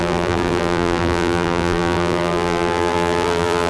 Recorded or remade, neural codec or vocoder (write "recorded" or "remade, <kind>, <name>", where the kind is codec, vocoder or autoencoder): remade, vocoder, BigVGAN v2